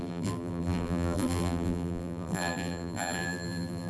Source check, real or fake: fake